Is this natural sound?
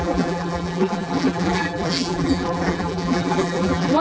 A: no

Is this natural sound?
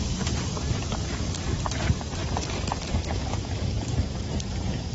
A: no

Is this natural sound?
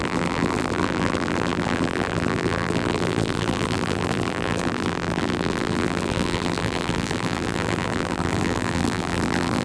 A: no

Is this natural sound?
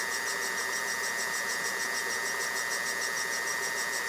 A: yes